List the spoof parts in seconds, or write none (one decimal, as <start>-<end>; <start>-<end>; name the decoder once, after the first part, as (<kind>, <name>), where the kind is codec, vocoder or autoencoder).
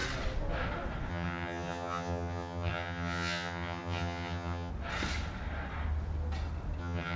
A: 1.1-4.7 (vocoder, HiFi-GAN); 6.8-7.2